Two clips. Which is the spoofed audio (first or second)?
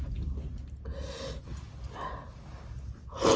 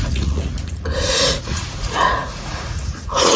second